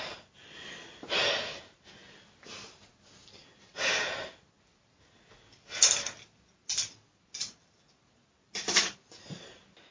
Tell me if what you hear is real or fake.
real